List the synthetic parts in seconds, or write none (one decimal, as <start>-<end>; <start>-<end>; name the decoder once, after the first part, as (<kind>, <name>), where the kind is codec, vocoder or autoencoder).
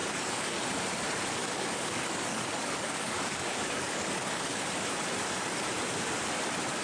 0.0-0.6 (codec, DAC); 1.4-4.6